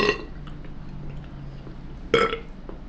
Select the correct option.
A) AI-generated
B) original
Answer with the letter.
B